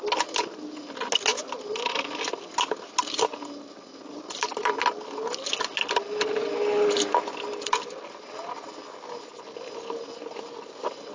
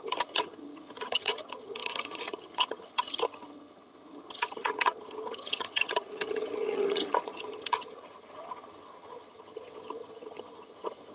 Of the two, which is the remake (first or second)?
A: second